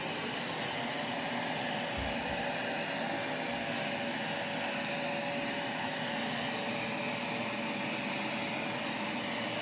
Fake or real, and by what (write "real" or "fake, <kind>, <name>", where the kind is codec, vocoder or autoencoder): real